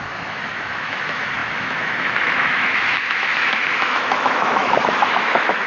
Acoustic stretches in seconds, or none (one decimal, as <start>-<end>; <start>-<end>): none